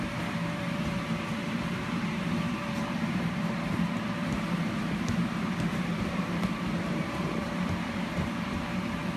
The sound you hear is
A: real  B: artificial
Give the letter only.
B